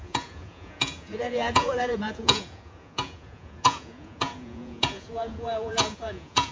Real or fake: fake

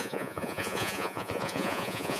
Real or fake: fake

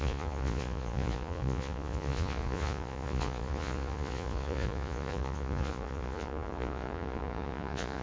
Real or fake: fake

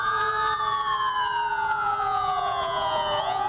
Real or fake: fake